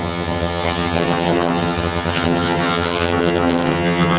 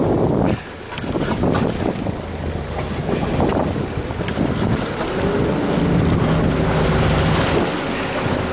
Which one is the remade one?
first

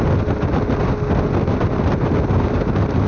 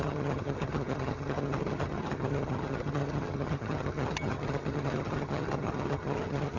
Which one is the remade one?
second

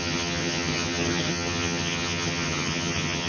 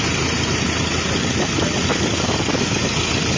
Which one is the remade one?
first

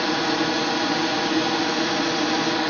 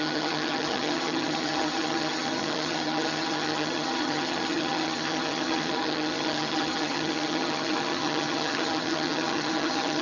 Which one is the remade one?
second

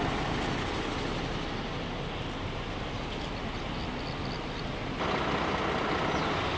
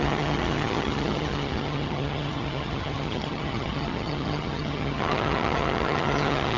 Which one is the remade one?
second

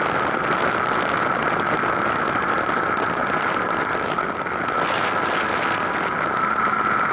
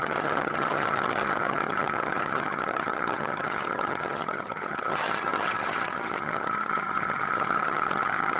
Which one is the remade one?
second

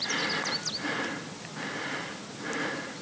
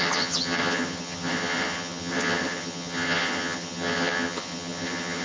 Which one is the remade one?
second